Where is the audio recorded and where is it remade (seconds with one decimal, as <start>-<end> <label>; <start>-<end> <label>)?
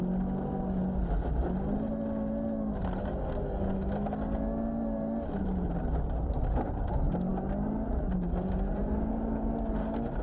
0.0-10.2 recorded